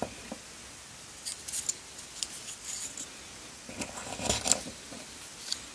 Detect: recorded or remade recorded